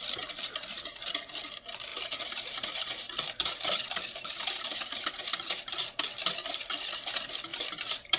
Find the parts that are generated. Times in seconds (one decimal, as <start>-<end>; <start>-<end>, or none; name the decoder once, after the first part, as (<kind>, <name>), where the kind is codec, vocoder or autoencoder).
1.9-6.0 (vocoder, BigVGAN v2); 7.5-8.2